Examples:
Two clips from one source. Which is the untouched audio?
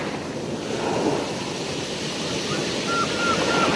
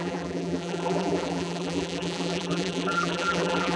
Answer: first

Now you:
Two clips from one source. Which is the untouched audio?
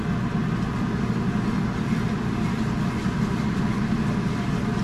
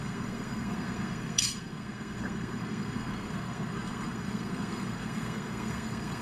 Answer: first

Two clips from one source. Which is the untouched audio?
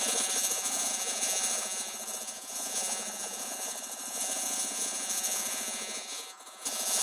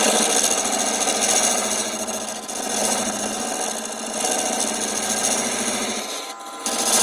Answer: second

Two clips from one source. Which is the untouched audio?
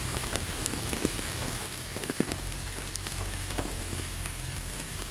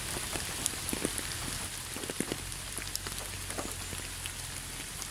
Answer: second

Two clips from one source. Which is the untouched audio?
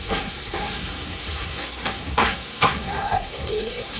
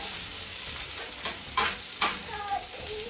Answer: second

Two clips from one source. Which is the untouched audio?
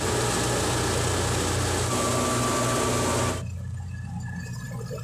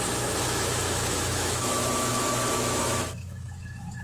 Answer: first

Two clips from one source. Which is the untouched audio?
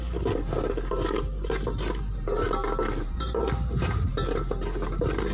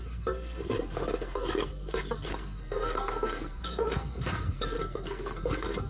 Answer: first